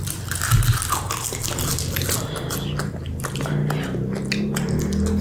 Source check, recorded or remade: recorded